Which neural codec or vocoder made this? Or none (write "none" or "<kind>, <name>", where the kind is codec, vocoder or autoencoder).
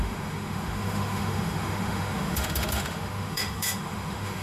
autoencoder, DAC-VAE